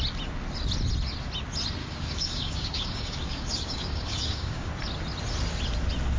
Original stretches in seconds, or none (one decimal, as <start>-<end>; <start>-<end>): 0.0-1.8; 4.7-6.2